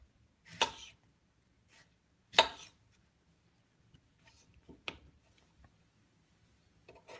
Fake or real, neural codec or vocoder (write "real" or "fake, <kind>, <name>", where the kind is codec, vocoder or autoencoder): real